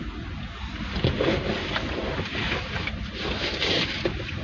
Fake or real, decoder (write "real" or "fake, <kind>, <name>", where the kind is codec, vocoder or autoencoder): real